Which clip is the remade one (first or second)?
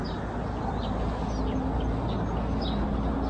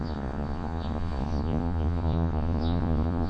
second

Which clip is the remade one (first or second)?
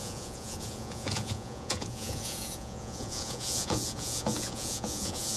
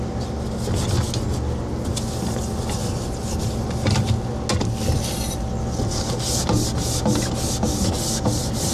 first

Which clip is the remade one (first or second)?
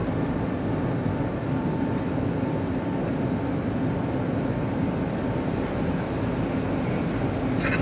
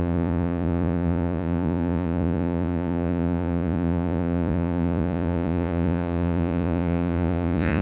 second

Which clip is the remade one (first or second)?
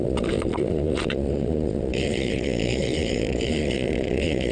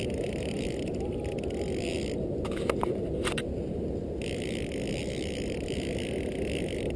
first